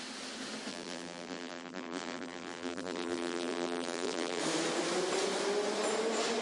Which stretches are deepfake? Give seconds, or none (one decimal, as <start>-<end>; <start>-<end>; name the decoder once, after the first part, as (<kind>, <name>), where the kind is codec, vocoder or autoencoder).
0.7-4.4 (vocoder, BigVGAN v2)